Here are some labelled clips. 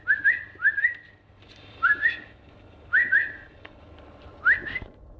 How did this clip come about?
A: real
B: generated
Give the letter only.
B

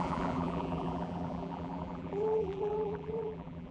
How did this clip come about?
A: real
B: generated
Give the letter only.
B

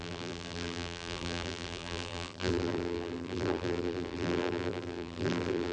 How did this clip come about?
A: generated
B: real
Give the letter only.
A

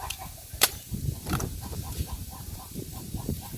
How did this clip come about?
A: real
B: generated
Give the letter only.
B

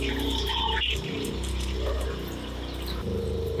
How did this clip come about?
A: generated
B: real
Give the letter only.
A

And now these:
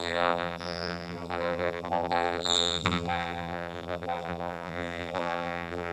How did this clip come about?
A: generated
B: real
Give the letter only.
A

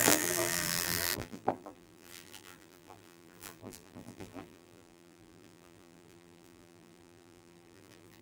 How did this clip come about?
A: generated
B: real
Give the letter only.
A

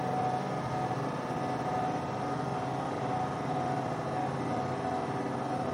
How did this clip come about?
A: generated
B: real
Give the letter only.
B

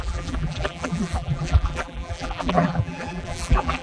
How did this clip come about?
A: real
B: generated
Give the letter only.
B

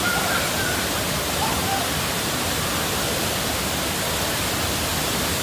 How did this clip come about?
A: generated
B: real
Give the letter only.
B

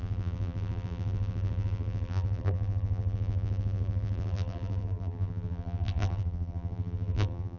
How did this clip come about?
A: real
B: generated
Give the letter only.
B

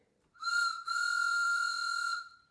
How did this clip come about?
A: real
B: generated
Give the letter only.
B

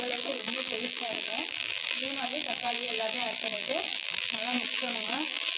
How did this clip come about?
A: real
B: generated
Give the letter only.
B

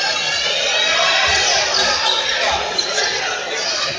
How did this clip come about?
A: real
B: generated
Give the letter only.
B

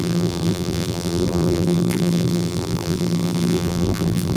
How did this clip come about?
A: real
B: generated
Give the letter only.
B